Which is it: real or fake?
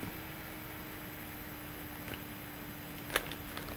real